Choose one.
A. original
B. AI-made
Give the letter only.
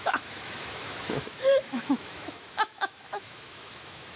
B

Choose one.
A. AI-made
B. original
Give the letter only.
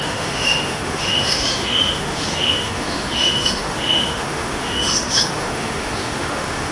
A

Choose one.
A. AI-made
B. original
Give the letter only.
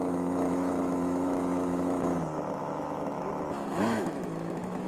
A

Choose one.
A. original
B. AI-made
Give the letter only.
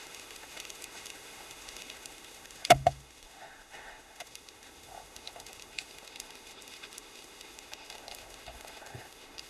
B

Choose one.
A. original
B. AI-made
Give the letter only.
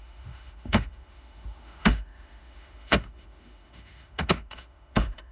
B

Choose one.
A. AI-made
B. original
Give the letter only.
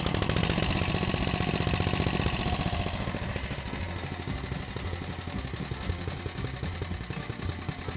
B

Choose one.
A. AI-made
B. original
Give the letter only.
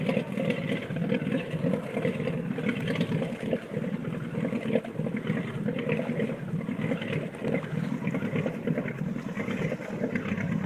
B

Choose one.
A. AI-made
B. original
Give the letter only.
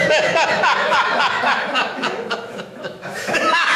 A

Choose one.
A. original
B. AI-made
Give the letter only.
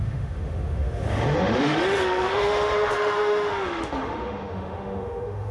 B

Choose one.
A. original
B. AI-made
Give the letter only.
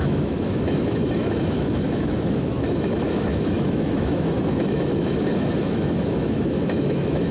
B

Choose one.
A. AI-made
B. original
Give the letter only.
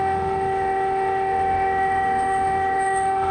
A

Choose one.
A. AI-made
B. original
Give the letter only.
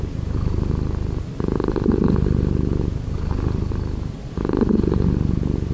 B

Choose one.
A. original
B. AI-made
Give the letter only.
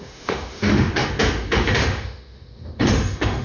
B